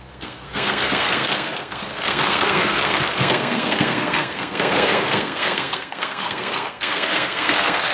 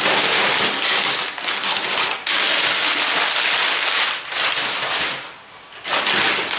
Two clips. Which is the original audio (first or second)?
second